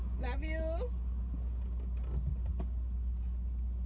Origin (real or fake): real